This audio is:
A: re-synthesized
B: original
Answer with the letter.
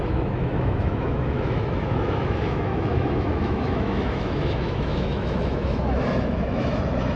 A